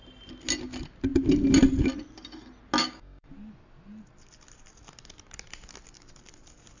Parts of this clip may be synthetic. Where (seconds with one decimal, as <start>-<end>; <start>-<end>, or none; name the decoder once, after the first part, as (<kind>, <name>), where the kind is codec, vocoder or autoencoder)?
2.8-3.3 (codec, DAC)